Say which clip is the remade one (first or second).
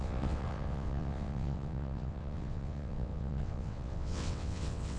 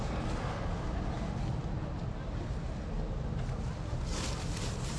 first